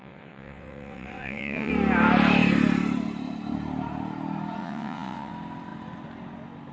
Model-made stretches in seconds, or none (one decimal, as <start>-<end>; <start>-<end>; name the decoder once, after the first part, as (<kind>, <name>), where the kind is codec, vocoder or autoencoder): 0.0-1.7 (vocoder, WaveNeXt); 4.6-5.3